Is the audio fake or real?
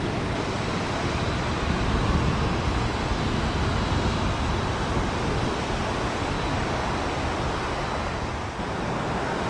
real